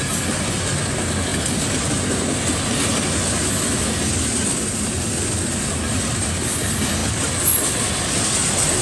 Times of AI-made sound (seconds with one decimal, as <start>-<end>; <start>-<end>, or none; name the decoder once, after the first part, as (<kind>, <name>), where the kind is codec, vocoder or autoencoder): none